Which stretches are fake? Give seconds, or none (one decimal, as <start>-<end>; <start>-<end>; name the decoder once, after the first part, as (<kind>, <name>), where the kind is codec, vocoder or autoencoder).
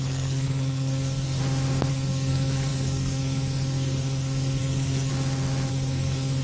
0.0-1.4 (codec, SNAC); 1.9-5.1; 5.7-6.4